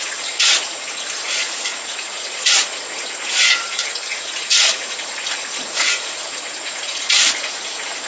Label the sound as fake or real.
fake